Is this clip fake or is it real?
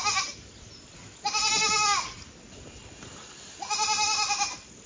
real